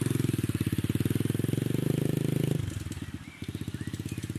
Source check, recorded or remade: recorded